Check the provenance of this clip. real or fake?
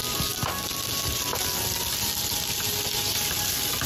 real